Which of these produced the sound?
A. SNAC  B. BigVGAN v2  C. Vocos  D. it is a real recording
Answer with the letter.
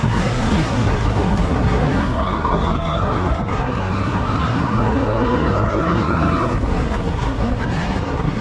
A